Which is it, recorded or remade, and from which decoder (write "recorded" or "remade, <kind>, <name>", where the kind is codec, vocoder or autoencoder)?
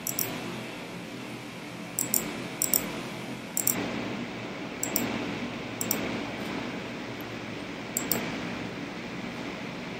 recorded